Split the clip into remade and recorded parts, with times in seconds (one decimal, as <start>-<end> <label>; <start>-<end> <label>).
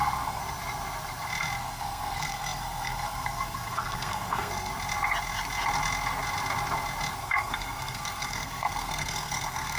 0.0-0.4 remade; 0.4-1.6 recorded; 1.6-4.7 remade; 4.7-7.2 recorded; 7.2-9.8 remade